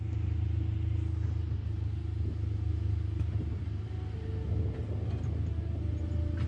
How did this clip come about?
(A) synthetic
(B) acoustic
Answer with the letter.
B